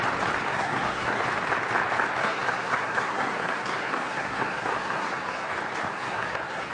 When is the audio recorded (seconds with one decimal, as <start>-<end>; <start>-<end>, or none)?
0.0-0.5; 1.2-2.2; 5.5-5.9